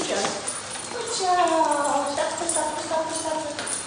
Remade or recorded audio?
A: recorded